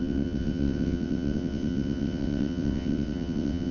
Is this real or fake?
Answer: fake